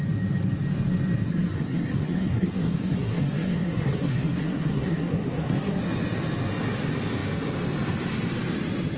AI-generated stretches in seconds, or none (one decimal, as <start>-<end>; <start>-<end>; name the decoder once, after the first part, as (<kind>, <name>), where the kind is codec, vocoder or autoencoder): 1.3-5.8 (codec, SNAC)